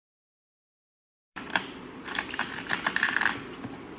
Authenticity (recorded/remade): remade